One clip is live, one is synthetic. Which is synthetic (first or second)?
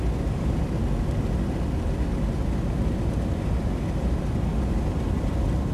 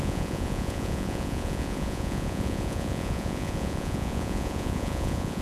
second